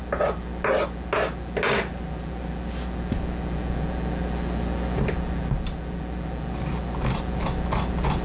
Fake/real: real